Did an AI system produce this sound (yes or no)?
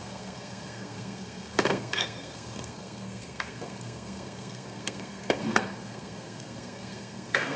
yes